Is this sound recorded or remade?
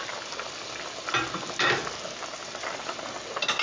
recorded